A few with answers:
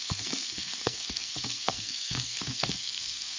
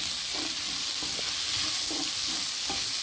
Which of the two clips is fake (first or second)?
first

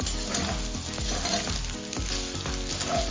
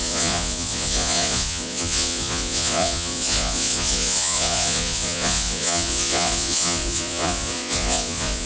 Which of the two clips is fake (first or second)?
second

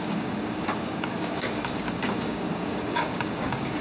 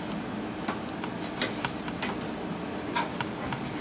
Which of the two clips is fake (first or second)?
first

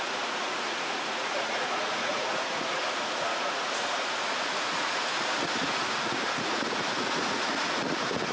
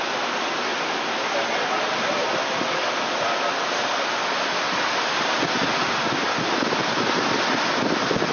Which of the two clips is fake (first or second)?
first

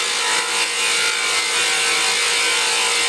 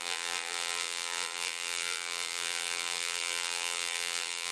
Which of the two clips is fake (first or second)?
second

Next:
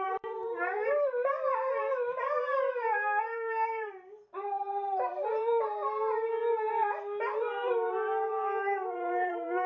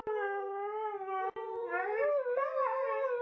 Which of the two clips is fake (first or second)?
first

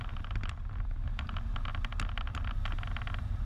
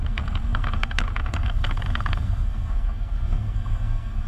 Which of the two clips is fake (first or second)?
second